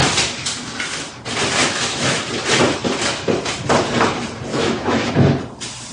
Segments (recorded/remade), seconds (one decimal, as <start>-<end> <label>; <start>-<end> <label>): 0.0-1.6 recorded; 1.6-2.2 remade; 2.2-4.5 recorded; 4.5-5.1 remade; 5.1-5.9 recorded